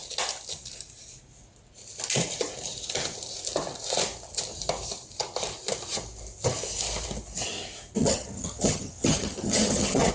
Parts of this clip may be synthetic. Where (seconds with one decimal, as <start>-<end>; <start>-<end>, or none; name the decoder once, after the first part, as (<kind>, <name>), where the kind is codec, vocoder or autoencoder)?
8.0-10.1 (vocoder, HiFi-GAN)